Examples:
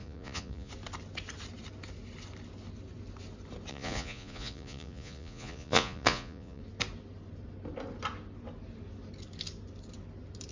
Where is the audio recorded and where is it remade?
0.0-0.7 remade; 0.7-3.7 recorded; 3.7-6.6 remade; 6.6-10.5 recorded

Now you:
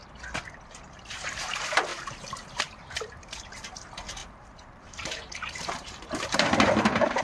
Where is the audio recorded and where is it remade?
0.0-0.7 recorded; 0.7-1.9 remade; 1.9-2.5 recorded; 2.5-7.2 remade

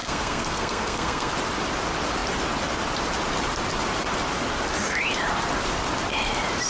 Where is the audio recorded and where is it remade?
0.0-1.3 remade; 1.3-6.7 recorded

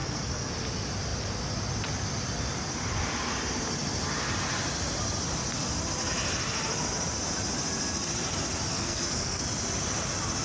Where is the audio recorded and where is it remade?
0.0-0.5 remade; 0.5-8.7 recorded; 8.7-9.4 remade; 9.4-10.4 recorded

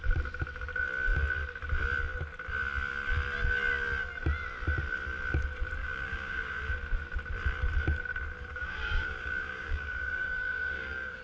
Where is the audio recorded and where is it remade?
0.0-5.8 recorded; 5.8-6.6 remade; 6.6-8.5 recorded; 8.5-11.2 remade

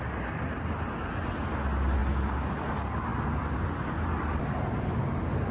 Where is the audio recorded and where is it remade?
0.0-5.5 recorded